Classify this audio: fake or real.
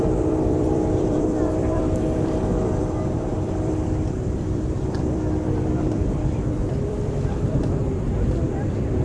fake